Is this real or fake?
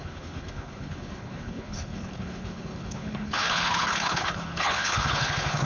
fake